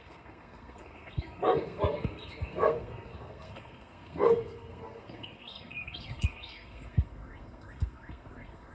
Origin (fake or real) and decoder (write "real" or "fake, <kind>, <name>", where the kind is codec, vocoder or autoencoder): fake, codec, SNAC